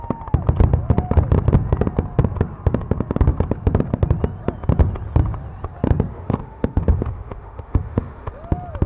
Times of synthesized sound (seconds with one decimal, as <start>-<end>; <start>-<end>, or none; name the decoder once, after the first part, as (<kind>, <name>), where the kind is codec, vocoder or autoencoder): 6.1-8.3 (autoencoder, DAC-VAE)